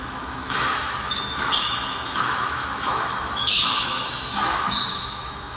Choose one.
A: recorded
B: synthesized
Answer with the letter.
B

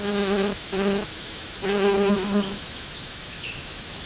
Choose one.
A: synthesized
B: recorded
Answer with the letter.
A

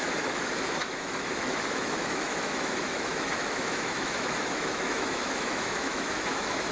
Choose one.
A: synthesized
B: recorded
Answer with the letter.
A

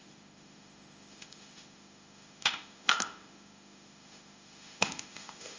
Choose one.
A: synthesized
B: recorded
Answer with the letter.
A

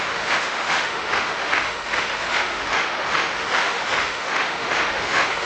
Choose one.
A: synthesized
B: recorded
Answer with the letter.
A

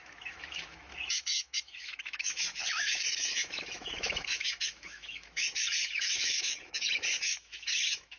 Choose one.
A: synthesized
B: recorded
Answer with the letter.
A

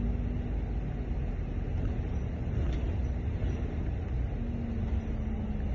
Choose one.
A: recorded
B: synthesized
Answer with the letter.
A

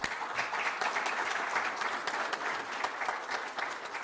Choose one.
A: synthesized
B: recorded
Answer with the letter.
B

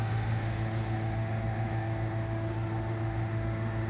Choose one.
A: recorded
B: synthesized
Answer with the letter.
B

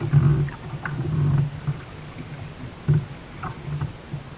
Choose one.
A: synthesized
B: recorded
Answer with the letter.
B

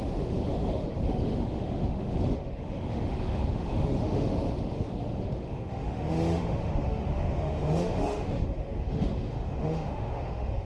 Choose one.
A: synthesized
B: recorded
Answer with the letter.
A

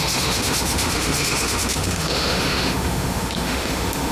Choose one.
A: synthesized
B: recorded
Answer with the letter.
A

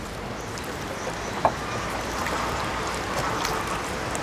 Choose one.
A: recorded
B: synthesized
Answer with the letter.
A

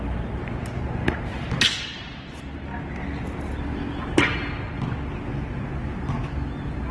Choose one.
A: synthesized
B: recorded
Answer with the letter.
B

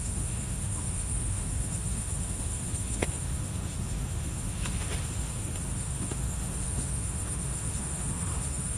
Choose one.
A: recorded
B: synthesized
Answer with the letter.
B